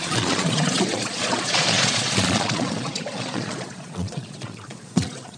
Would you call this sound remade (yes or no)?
yes